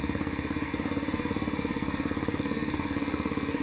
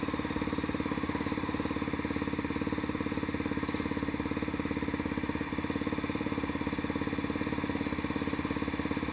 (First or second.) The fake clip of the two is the first